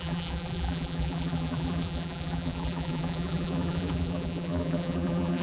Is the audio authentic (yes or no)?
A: no